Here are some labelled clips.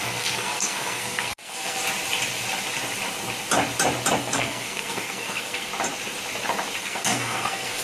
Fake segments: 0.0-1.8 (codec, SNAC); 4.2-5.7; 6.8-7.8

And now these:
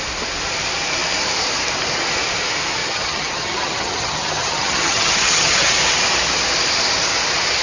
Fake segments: 2.8-5.7 (vocoder, HiFi-GAN)

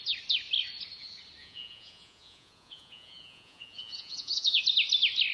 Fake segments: 1.4-4.6 (vocoder, Vocos)

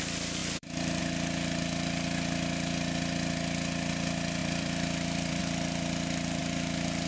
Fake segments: 0.4-1.0 (vocoder, BigVGAN v2); 4.4-5.4; 6.4-7.1

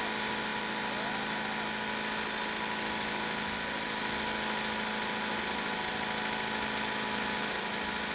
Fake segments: none

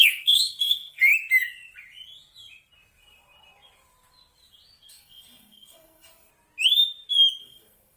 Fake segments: 0.0-1.1 (codec, SNAC); 4.9-6.3; 7.4-8.0